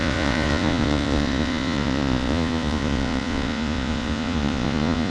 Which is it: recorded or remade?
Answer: remade